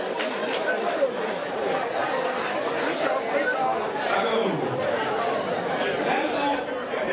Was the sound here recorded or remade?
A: remade